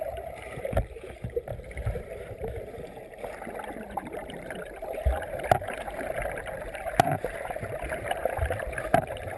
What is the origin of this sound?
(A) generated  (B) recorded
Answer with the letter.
A